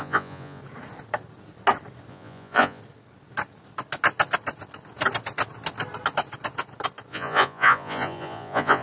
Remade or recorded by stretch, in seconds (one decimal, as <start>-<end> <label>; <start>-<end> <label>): 0.0-0.6 remade; 0.6-2.1 recorded; 2.1-2.8 remade; 2.8-7.1 recorded; 7.1-8.8 remade